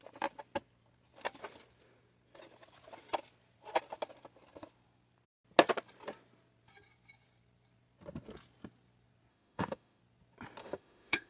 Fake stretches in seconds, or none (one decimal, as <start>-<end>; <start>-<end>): 9.3-10.0; 10.6-11.3